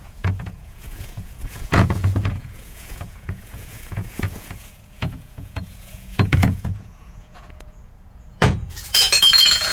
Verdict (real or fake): fake